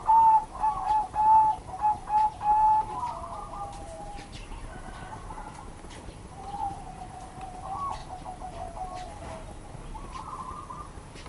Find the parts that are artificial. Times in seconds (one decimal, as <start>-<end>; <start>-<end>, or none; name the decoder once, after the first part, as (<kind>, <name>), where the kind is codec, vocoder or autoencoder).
0.0-8.0 (vocoder, BigVGAN v2)